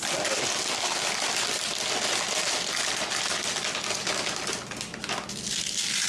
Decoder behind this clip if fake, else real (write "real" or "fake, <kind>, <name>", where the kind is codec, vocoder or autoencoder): real